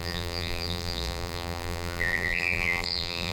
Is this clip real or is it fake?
fake